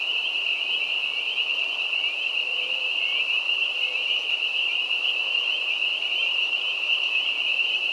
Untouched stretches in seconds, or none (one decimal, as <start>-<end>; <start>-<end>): 1.0-1.8